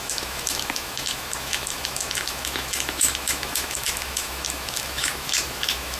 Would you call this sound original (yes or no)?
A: no